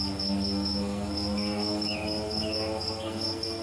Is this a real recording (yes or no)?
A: no